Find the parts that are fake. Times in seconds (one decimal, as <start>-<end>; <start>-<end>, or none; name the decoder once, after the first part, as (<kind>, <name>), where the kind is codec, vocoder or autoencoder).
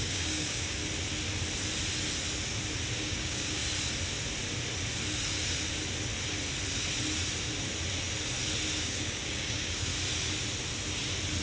0.0-0.8 (codec, DAC); 3.0-3.6; 8.8-9.9